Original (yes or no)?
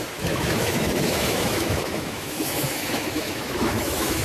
no